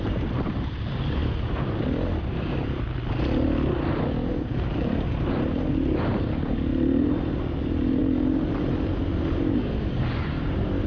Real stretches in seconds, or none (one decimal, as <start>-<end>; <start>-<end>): 1.2-4.3; 6.7-7.6; 8.0-9.2